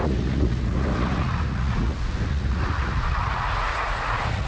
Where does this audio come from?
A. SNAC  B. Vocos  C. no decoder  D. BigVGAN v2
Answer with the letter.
B